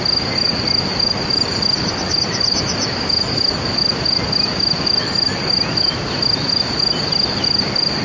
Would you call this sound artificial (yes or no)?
no